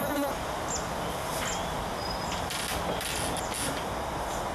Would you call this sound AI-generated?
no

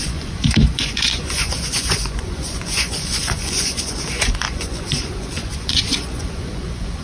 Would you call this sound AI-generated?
yes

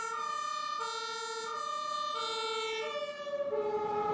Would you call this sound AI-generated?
no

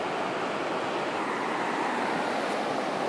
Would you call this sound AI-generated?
no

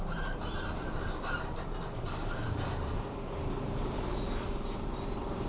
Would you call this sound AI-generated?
yes